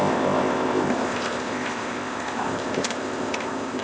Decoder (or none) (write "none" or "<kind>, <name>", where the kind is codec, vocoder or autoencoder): codec, ZipCodec